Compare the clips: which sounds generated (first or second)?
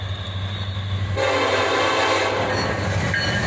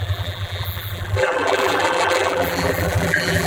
second